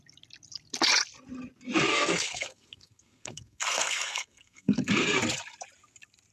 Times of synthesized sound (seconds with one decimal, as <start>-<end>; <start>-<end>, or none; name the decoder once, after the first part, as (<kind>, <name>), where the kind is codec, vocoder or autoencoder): 1.9-5.2 (codec, SNAC)